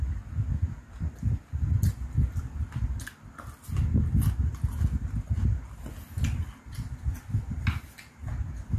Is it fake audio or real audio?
real